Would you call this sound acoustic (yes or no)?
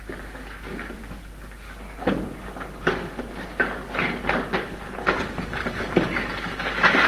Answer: no